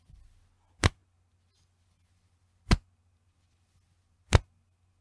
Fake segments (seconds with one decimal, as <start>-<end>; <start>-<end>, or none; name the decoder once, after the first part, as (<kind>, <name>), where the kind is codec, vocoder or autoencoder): none